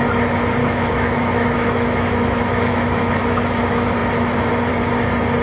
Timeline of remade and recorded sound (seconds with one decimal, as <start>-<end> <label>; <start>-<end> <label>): 0.0-0.6 recorded; 0.6-3.1 remade; 3.1-5.4 recorded